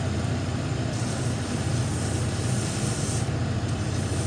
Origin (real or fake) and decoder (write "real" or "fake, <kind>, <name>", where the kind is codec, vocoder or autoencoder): fake, vocoder, BigVGAN v2